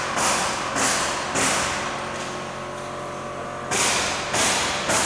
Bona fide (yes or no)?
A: yes